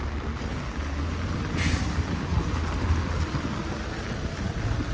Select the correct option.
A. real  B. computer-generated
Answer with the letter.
A